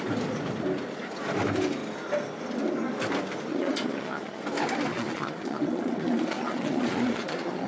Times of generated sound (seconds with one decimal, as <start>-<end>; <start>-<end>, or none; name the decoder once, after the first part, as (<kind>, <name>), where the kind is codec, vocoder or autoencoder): 3.5-4.4 (vocoder, Vocos); 4.9-7.7

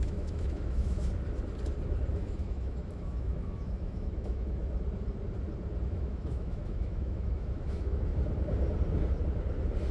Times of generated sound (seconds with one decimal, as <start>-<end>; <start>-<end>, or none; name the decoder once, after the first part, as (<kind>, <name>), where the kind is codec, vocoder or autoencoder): 0.0-1.1 (autoencoder, DAC-VAE); 2.1-4.6; 5.8-8.1

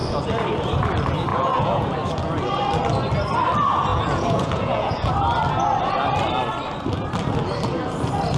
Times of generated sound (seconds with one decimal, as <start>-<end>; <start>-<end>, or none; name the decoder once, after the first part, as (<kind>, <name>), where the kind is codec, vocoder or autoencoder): 1.3-1.9 (vocoder, Vocos); 3.9-5.1

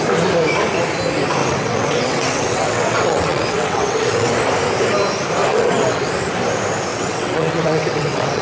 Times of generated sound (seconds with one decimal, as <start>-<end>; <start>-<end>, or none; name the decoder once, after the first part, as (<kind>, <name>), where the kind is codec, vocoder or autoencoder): 1.4-4.3 (vocoder, WaveNeXt); 5.4-6.1; 6.9-8.4